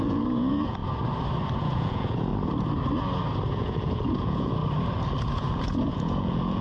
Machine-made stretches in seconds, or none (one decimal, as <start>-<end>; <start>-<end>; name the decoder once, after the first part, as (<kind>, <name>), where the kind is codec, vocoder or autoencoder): 0.0-0.8 (vocoder, Vocos); 1.6-2.3; 3.5-4.6; 5.2-6.6